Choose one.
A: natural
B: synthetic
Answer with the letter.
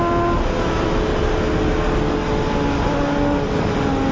A